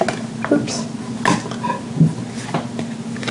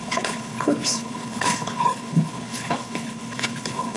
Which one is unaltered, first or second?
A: first